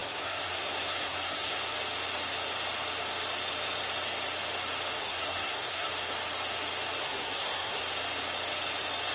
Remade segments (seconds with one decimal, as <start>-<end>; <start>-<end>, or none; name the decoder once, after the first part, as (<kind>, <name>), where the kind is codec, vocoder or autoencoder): 0.0-1.6 (codec, SNAC); 5.0-5.9; 7.0-7.8